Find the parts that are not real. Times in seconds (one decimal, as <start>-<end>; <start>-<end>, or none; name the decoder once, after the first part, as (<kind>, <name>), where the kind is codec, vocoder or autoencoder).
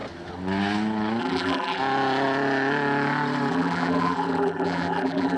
1.2-1.8 (vocoder, BigVGAN v2); 3.5-5.4